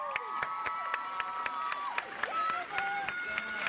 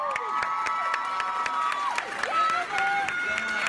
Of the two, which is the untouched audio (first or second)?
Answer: second